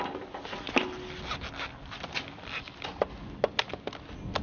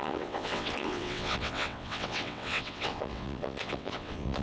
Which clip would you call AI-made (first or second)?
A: second